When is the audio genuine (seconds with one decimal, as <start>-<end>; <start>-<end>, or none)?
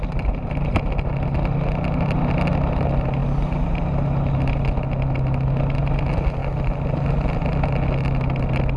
0.0-8.8